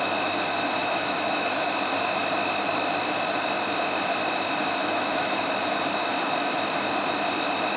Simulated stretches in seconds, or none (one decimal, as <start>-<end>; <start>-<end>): 0.8-1.6; 4.8-5.4